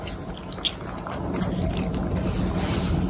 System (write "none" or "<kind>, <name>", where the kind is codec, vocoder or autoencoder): none